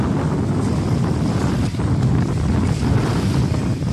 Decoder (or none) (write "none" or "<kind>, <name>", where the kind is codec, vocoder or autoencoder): none